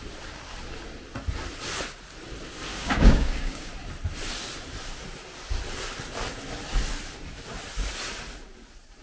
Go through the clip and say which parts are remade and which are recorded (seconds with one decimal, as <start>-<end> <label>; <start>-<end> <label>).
0.0-2.7 recorded; 2.7-3.7 remade; 3.7-9.0 recorded